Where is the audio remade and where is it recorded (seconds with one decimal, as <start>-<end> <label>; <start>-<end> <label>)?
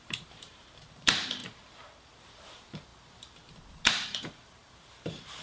0.0-1.4 remade; 1.4-2.2 recorded; 2.2-2.9 remade; 2.9-3.7 recorded; 3.7-5.4 remade